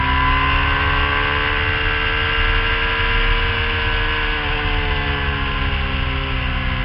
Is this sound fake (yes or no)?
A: no